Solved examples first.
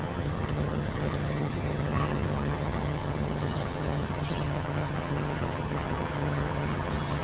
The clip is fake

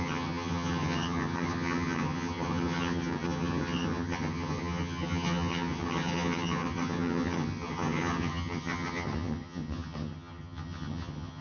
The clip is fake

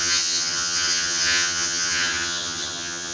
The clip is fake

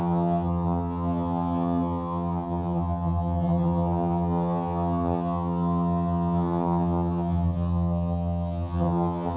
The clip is fake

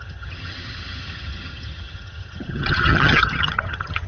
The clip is fake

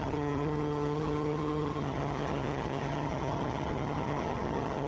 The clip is fake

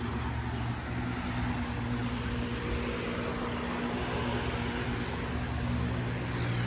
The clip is real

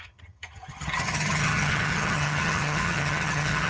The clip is fake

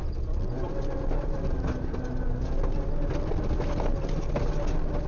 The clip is real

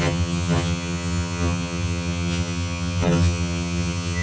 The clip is fake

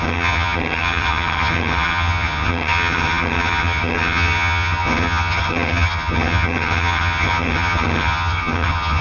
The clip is fake